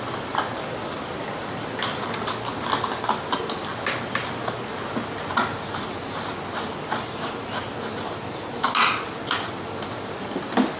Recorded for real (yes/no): yes